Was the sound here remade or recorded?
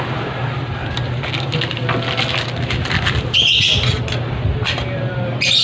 recorded